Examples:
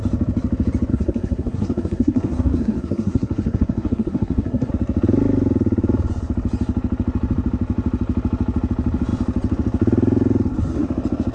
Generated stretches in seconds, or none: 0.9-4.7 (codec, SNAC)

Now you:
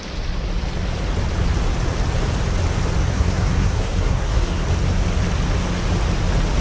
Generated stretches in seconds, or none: 3.1-4.6 (codec, SNAC)

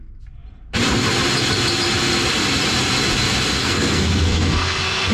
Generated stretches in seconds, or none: 3.6-5.1 (codec, SNAC)